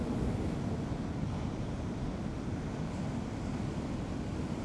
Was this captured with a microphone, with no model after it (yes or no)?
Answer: yes